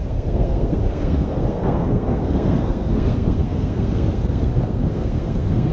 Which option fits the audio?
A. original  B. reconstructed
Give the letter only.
B